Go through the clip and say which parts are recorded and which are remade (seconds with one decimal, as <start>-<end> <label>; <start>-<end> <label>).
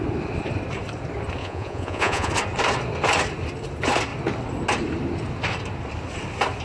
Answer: 0.0-1.4 recorded; 1.4-2.3 remade; 2.3-6.6 recorded